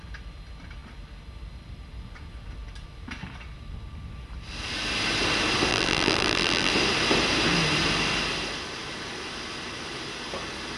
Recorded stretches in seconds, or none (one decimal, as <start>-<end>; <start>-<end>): 0.0-5.7; 6.7-10.8